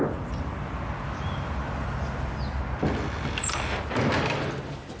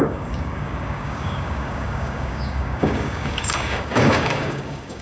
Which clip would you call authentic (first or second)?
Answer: first